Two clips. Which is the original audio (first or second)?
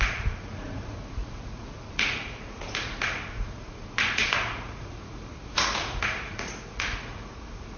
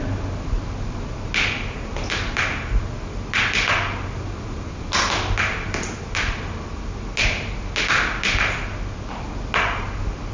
second